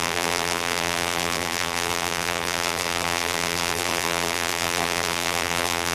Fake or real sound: fake